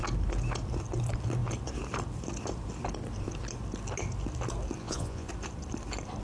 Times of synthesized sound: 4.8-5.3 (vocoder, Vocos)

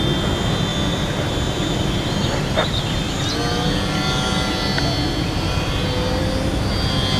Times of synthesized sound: none

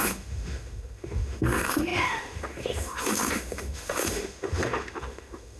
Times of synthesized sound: 0.0-5.6 (autoencoder, DAC-VAE)

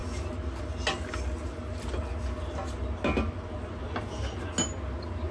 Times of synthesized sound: none

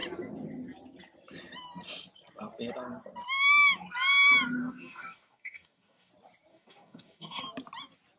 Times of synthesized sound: 4.6-6.1 (codec, DAC); 6.5-7.4

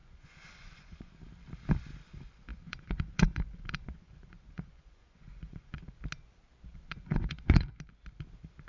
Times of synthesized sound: 0.0-1.1 (vocoder, Vocos); 2.5-5.9; 6.7-7.7